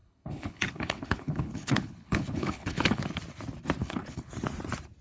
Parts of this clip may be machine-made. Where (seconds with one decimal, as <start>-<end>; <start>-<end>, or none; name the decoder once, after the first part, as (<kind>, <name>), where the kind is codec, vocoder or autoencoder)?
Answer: 0.0-3.0 (codec, HILCodec); 3.8-4.3